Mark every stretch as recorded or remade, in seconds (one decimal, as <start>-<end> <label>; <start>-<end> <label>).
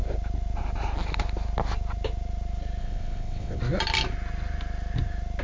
0.0-2.8 recorded; 2.8-3.6 remade; 3.6-5.4 recorded